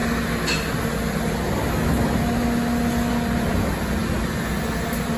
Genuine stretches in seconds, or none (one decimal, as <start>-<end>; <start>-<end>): 0.0-5.2